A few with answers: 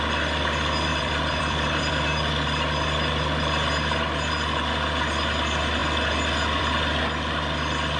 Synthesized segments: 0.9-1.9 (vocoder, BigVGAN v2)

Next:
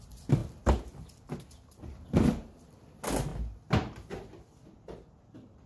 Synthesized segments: none

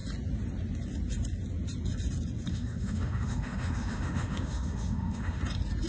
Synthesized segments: 2.5-5.4 (autoencoder, DAC-VAE)